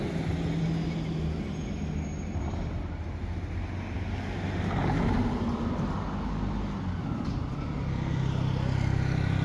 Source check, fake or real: real